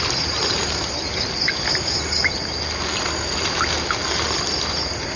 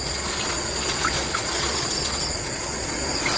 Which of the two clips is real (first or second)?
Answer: first